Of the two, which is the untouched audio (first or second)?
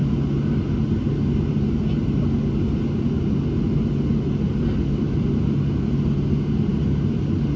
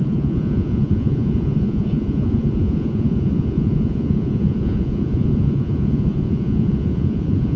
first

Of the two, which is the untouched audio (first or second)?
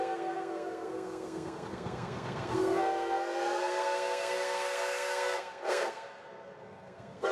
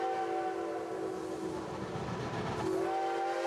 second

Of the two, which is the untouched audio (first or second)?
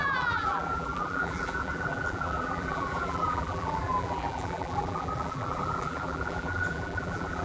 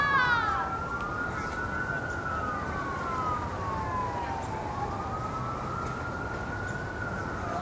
second